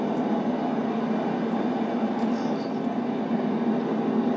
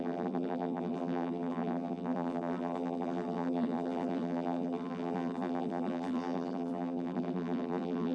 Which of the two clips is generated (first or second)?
second